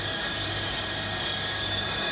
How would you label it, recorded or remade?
remade